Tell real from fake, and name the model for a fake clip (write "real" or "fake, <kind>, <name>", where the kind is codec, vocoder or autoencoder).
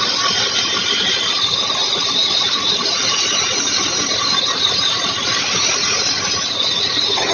real